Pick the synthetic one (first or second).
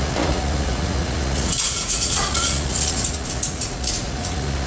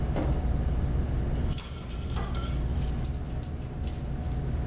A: first